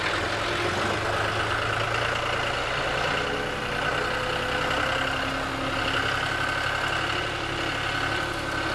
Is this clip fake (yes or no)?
no